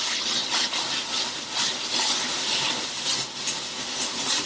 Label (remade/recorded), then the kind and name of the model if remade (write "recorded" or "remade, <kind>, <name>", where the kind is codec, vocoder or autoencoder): recorded